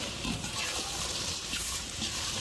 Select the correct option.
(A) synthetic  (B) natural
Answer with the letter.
A